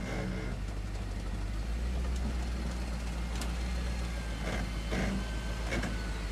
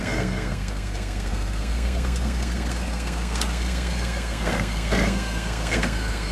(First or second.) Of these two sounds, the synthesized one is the second